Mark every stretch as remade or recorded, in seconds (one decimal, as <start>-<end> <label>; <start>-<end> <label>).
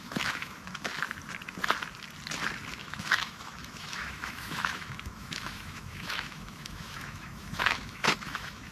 0.0-0.9 remade; 0.9-2.7 recorded; 2.7-8.7 remade